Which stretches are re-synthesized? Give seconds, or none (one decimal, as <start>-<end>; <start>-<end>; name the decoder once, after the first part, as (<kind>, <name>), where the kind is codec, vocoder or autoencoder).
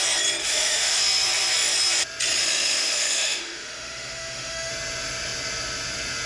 0.4-1.0 (autoencoder, DAC-VAE); 2.4-4.7